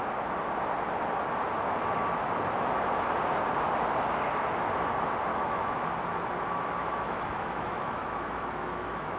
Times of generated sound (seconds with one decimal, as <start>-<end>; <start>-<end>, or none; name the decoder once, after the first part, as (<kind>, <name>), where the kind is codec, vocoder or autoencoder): 5.3-5.9 (autoencoder, DAC-VAE); 6.8-9.2